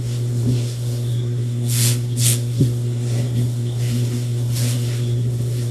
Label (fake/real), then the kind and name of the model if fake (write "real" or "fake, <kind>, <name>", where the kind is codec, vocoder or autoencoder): fake, codec, SNAC